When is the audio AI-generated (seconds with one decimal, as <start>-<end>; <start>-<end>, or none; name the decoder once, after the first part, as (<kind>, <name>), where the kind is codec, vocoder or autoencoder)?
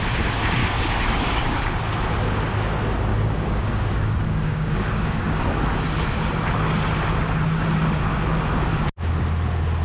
0.6-1.7 (codec, DAC); 3.1-5.4